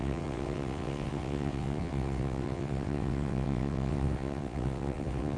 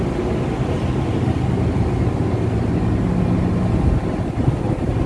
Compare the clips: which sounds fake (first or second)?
first